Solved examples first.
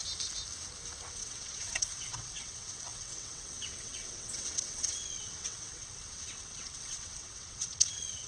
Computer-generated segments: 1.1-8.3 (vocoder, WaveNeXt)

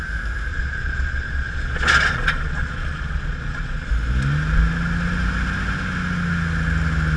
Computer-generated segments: 0.5-3.9 (vocoder, Vocos)